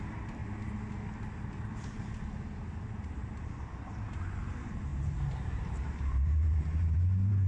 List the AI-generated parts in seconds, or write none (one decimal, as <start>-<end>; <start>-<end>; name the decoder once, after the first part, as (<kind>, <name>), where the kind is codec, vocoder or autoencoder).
0.0-0.4 (vocoder, BigVGAN v2); 2.9-7.5